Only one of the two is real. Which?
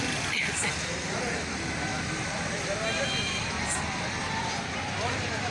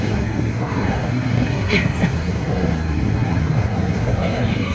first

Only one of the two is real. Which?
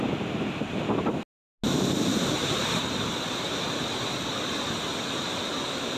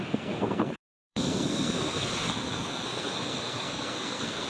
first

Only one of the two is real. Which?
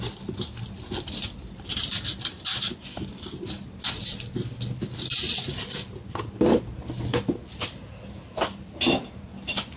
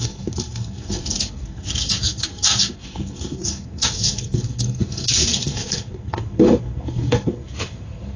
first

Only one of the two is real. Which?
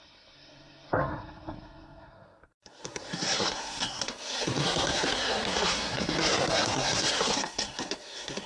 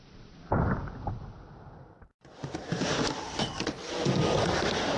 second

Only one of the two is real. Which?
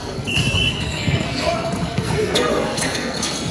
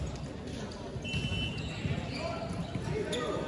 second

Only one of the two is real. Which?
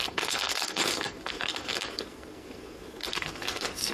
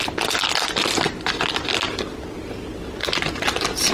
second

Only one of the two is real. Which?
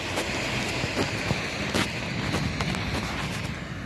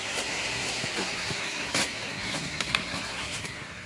first